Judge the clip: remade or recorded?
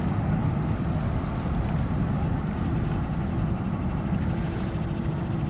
recorded